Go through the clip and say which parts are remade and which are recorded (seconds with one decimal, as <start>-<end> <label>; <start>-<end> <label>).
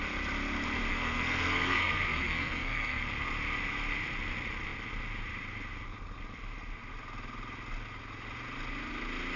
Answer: 0.0-0.9 recorded; 0.9-3.0 remade; 3.0-9.4 recorded